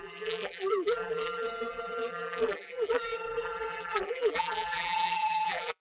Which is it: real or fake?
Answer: fake